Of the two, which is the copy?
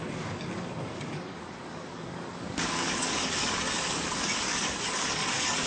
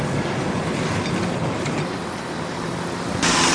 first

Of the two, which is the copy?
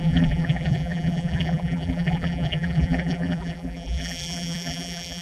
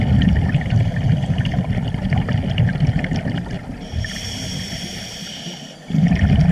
first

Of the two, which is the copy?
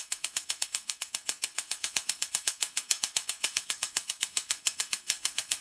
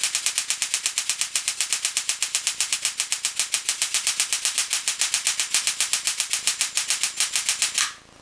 first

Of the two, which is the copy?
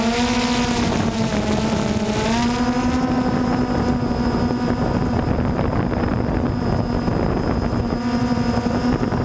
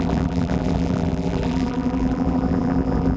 second